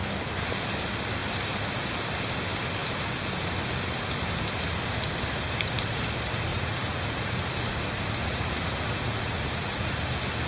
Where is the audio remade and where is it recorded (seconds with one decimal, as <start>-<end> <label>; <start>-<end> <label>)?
0.0-6.5 recorded; 6.5-10.0 remade; 10.0-10.5 recorded

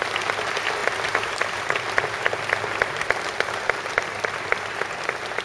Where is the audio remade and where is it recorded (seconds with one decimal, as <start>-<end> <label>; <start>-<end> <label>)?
0.0-5.4 recorded

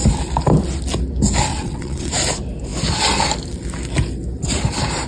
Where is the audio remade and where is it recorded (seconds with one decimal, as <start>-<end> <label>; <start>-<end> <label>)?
0.0-1.5 recorded; 1.5-2.1 remade; 2.1-5.1 recorded

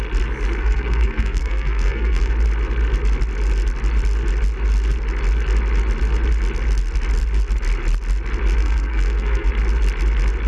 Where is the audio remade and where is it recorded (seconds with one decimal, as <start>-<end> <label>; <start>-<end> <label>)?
0.0-0.6 recorded; 0.6-2.3 remade; 2.3-8.6 recorded; 8.6-9.5 remade; 9.5-10.5 recorded

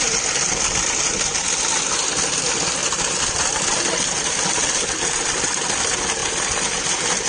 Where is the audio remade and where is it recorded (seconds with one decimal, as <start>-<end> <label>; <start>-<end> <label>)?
0.0-7.3 recorded

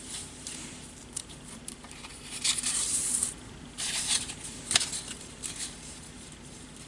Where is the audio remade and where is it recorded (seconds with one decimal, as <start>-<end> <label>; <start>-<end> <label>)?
0.0-6.9 remade

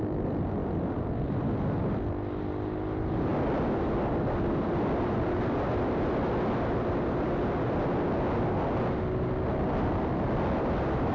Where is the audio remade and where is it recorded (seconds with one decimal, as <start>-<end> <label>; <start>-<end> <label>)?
0.0-11.1 recorded